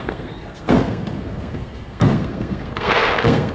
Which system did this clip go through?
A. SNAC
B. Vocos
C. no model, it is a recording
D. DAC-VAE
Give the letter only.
A